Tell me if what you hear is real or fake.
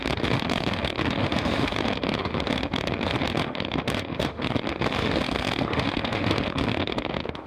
fake